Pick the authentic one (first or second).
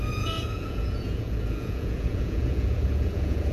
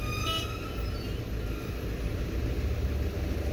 second